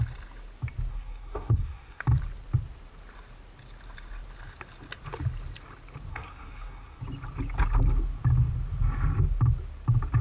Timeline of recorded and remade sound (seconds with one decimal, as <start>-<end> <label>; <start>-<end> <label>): 0.0-0.9 recorded; 0.9-2.0 remade; 2.0-6.1 recorded; 6.1-7.0 remade; 7.0-10.2 recorded